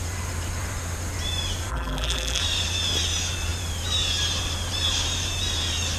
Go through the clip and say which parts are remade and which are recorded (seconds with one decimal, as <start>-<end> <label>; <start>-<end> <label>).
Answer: 0.0-1.7 recorded; 1.7-2.4 remade; 2.4-6.0 recorded